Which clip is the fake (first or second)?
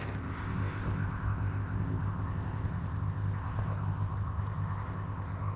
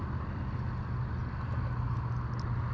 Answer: first